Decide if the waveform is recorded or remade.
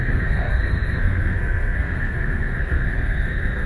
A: remade